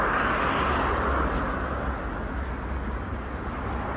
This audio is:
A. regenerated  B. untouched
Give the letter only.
B